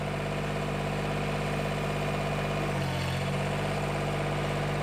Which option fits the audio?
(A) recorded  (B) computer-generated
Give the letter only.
A